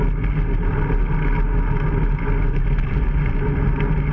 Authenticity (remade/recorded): recorded